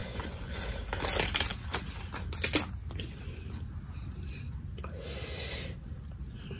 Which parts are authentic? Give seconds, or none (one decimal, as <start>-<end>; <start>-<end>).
0.6-6.6